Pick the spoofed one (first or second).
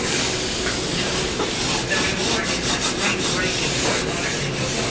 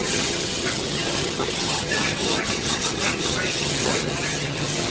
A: second